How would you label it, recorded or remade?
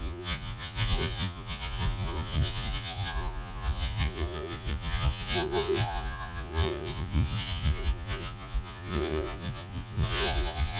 remade